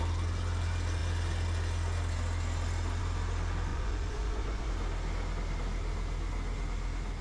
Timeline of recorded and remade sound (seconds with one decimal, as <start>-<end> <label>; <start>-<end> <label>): 0.0-3.7 recorded; 3.7-4.7 remade; 4.7-7.2 recorded